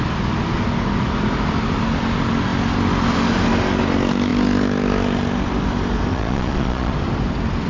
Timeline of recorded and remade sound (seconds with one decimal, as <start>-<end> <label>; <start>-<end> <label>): 0.0-6.1 recorded; 6.1-6.9 remade; 6.9-7.7 recorded